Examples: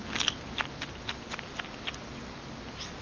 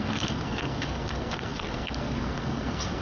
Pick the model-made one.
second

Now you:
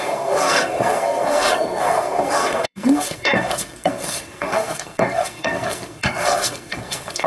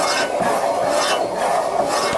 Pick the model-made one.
first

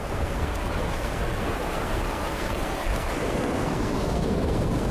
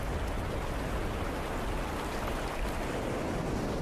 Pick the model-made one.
first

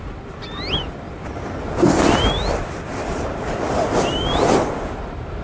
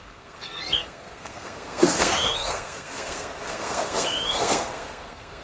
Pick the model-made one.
second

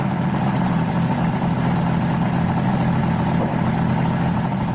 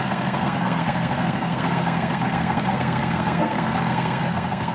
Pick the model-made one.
second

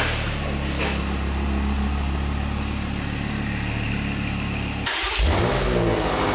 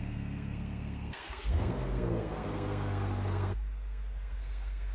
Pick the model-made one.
second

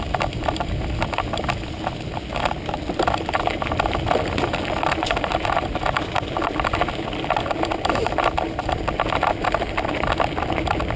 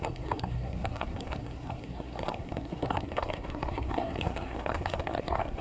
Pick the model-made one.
second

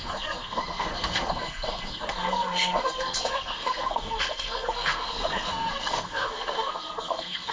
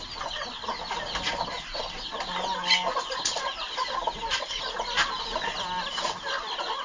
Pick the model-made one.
first